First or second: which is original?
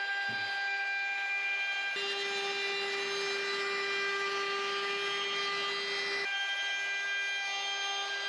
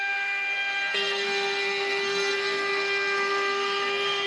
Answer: first